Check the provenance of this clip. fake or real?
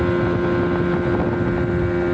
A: real